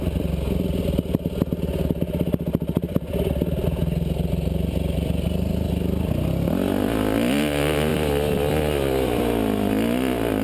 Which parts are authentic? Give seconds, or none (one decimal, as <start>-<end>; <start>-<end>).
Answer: 0.0-10.4